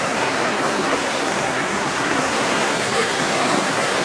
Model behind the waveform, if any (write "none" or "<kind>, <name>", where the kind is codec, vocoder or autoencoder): codec, SNAC